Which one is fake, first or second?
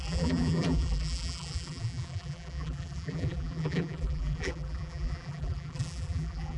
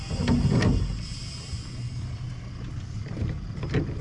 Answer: first